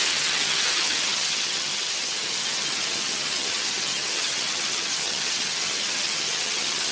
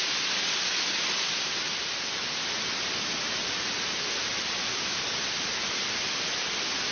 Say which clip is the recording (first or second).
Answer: second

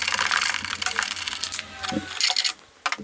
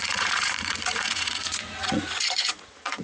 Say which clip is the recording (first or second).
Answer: first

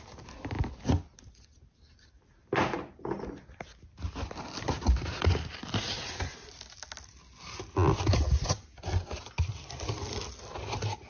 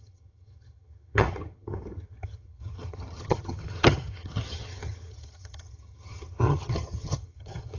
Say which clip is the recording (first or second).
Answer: first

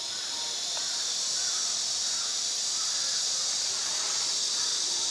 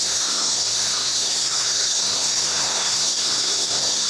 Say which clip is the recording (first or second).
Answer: first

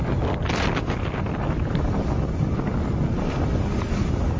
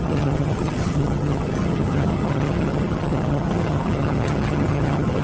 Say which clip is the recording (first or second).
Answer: first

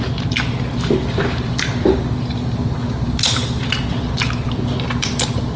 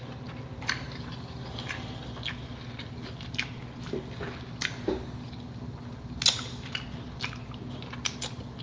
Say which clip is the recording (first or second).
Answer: second